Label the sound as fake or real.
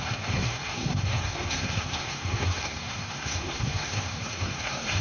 fake